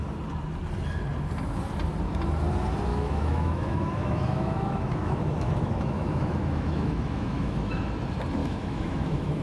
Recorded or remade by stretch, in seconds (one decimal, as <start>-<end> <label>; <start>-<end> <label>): 0.0-2.9 recorded; 2.9-7.8 remade; 7.8-8.4 recorded; 8.4-9.4 remade